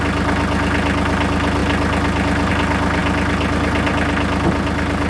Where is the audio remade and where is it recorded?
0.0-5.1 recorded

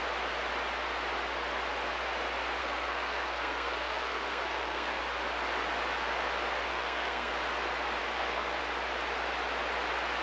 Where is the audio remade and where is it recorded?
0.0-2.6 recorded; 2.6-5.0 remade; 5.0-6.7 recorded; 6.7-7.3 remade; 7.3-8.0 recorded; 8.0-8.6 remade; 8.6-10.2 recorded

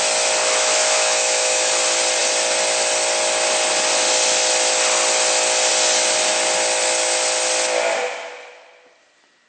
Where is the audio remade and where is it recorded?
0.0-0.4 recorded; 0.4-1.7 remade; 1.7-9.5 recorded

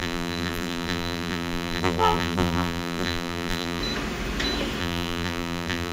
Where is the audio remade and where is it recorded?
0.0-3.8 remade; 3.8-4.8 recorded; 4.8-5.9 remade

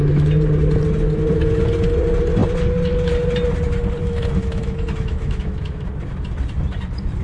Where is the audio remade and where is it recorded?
0.0-4.0 recorded; 4.0-5.9 remade; 5.9-7.2 recorded

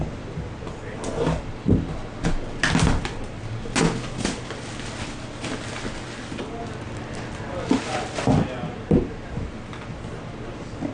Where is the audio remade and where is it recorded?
0.0-10.9 recorded

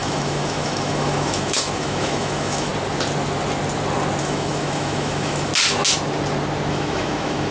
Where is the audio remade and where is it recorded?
0.0-2.7 remade; 2.7-4.2 recorded; 4.2-5.5 remade; 5.5-6.7 recorded; 6.7-7.5 remade